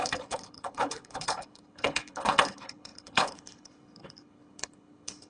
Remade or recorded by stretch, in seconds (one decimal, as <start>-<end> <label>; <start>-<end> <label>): 0.0-5.3 remade